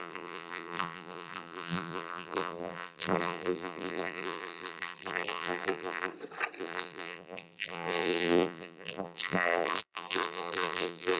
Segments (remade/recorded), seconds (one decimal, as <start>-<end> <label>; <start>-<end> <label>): 0.0-6.1 remade; 6.1-6.6 recorded; 6.6-11.2 remade